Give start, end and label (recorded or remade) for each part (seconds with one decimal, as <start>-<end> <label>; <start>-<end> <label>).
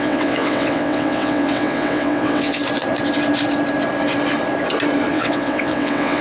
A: 0.0-2.6 remade; 2.6-5.1 recorded; 5.1-6.2 remade